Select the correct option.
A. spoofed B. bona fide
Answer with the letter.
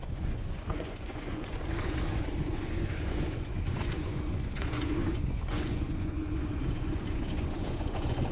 A